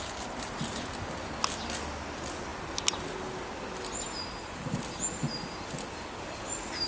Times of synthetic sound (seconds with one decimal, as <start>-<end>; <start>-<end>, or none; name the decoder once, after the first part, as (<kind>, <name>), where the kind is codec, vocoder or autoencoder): none